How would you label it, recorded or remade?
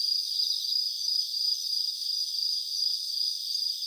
remade